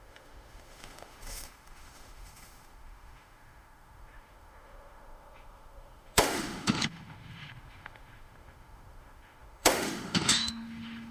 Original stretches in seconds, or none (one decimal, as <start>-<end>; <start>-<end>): none